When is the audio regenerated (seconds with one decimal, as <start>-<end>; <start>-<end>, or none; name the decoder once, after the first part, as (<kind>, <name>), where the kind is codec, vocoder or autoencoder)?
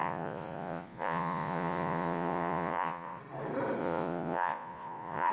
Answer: 0.0-3.2 (vocoder, Vocos); 3.8-5.3